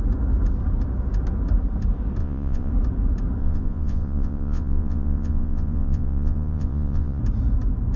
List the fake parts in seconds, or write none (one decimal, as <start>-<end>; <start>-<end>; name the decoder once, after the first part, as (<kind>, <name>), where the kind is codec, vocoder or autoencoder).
2.2-2.7 (vocoder, Vocos); 3.4-7.2